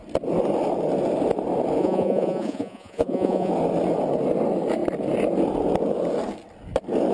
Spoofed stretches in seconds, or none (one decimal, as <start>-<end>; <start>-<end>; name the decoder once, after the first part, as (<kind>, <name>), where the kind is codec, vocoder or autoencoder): 1.8-3.5 (vocoder, Vocos)